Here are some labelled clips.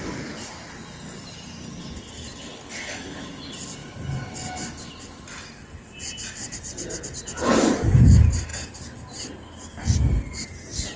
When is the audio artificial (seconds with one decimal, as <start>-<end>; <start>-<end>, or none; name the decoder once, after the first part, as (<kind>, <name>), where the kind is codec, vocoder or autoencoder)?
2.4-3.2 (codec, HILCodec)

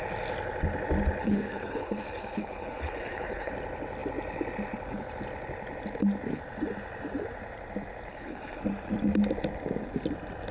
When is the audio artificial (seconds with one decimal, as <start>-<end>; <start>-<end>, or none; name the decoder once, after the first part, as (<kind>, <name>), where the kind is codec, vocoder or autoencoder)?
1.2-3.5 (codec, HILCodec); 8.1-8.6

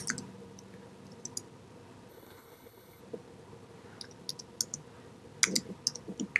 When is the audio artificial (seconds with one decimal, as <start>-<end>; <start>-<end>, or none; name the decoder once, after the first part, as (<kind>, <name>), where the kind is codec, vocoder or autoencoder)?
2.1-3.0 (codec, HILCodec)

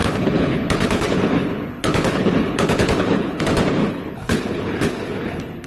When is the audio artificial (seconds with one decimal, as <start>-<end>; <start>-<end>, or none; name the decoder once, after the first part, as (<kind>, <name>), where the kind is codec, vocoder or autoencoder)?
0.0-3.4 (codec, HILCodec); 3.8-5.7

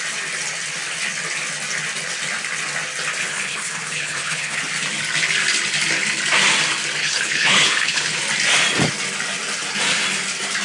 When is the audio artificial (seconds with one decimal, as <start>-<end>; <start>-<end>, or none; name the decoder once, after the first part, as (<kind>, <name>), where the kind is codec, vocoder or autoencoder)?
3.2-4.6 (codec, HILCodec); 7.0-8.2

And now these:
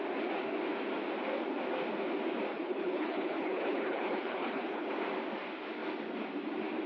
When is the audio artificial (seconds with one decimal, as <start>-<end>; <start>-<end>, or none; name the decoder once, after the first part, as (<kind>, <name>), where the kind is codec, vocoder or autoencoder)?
2.5-4.9 (codec, HILCodec)

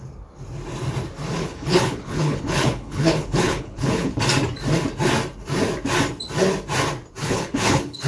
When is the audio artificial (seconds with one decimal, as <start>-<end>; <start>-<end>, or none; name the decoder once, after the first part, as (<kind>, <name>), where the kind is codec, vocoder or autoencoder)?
1.4-4.2 (codec, HILCodec); 7.2-8.1